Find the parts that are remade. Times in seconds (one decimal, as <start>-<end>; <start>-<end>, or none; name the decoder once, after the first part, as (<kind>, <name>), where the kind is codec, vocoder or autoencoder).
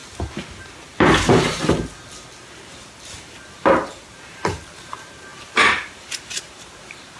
0.8-1.6 (vocoder, BigVGAN v2); 2.4-7.2